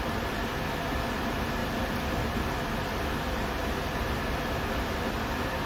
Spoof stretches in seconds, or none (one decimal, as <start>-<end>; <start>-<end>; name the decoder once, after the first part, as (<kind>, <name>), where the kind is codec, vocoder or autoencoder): 0.0-5.7 (vocoder, BigVGAN v2)